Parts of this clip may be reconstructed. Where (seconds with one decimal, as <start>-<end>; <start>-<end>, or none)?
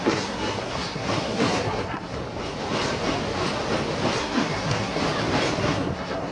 0.0-2.2; 4.2-5.0; 5.6-6.3